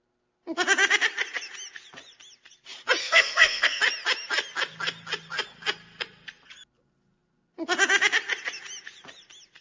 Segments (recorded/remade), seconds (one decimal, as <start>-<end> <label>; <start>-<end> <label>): 0.0-3.0 recorded; 3.0-3.8 remade; 3.8-9.6 recorded